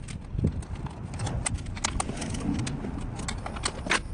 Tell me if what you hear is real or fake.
real